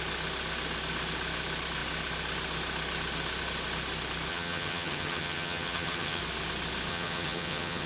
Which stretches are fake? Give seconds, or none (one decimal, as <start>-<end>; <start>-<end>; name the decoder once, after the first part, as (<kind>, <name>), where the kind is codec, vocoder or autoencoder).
4.3-6.2 (vocoder, HiFi-GAN); 6.9-7.9